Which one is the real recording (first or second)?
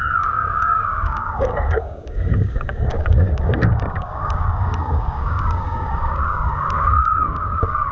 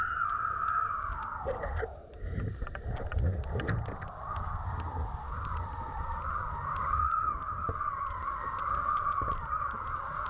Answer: second